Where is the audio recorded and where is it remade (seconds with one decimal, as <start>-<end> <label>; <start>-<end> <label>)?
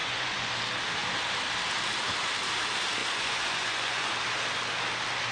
0.0-0.5 remade; 0.5-3.0 recorded; 3.0-4.1 remade; 4.1-5.3 recorded